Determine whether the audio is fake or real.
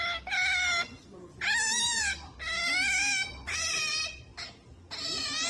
real